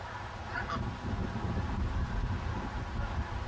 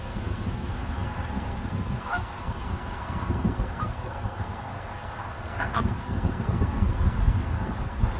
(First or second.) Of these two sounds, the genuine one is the first